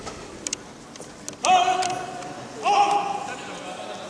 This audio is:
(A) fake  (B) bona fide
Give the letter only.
B